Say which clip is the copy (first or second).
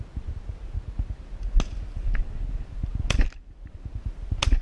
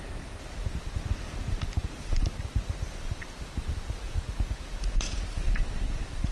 second